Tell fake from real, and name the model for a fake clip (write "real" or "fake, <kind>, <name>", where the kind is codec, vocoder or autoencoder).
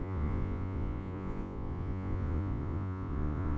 fake, vocoder, Vocos